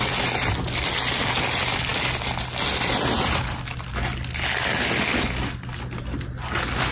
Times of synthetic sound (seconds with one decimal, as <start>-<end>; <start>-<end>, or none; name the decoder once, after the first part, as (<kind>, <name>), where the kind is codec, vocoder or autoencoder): none